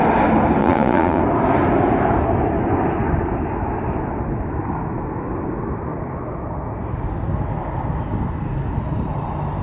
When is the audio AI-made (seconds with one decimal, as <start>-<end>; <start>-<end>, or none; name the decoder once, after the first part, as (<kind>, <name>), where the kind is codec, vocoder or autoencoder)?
0.6-1.2 (vocoder, Vocos)